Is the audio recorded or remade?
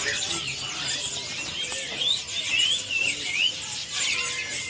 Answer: recorded